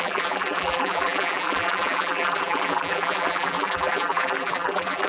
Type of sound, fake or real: fake